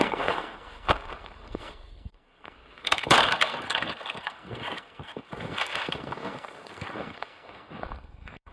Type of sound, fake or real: fake